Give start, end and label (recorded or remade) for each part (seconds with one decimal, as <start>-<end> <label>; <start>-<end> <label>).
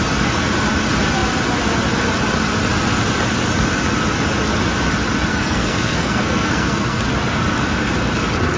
0.0-5.3 recorded; 5.3-7.0 remade; 7.0-8.6 recorded